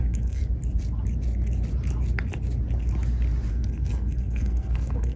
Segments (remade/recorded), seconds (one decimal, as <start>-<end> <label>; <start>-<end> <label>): 0.0-0.4 remade; 0.4-3.5 recorded; 3.5-5.2 remade